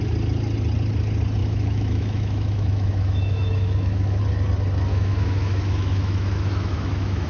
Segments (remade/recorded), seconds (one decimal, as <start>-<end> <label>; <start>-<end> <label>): 0.0-1.4 recorded; 1.4-4.2 remade; 4.2-4.9 recorded; 4.9-7.3 remade